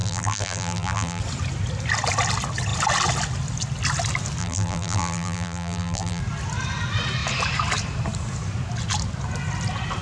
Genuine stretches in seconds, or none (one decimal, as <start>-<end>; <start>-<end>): 1.2-4.4; 6.2-10.0